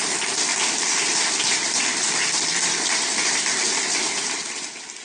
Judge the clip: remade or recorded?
remade